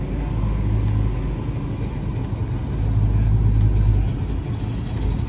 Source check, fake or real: real